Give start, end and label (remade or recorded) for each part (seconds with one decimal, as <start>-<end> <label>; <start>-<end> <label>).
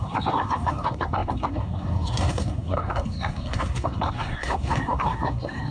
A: 0.0-5.7 remade